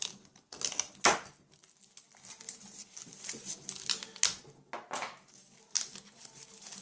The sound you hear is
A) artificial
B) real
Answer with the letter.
B